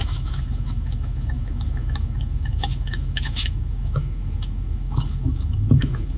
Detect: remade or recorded remade